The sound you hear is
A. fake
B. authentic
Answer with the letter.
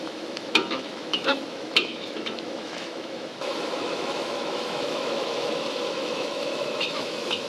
A